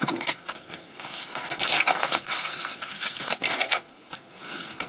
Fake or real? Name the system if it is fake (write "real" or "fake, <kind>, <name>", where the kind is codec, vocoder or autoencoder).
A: fake, codec, SNAC